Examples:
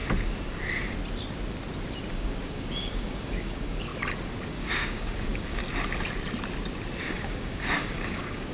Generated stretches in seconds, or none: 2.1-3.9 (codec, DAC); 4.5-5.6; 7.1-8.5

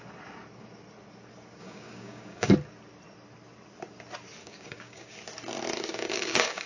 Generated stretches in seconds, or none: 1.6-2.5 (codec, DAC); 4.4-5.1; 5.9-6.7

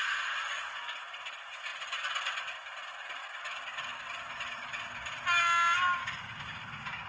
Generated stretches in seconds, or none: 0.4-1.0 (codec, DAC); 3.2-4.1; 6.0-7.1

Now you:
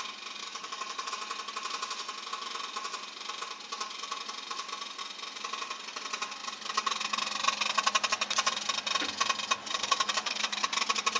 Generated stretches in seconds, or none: 0.4-1.1 (codec, DAC); 9.6-10.6